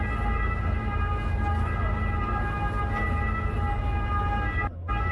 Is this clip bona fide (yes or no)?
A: yes